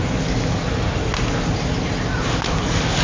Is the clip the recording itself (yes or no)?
yes